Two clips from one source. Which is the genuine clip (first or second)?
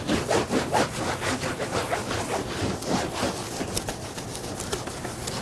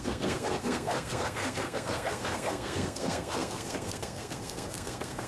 first